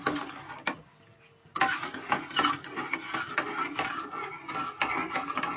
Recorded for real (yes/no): yes